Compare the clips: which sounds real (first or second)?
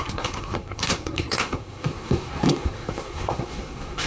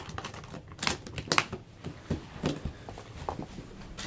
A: second